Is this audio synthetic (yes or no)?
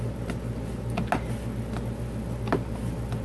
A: no